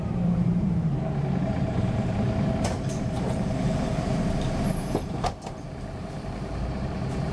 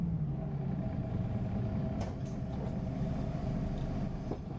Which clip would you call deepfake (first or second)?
first